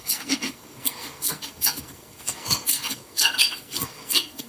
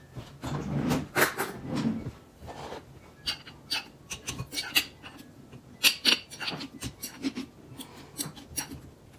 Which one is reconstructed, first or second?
first